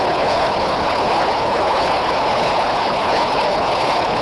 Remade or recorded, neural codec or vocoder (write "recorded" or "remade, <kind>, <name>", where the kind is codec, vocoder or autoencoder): remade, codec, HILCodec